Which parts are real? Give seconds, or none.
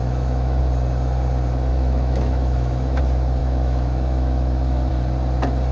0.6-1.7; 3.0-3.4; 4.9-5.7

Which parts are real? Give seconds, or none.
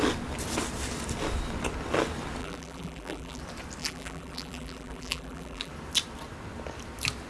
0.0-2.4; 3.4-3.8; 5.7-7.3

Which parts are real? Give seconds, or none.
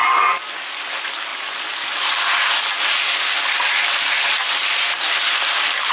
0.0-5.9